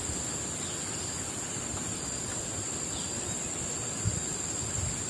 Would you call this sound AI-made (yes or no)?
no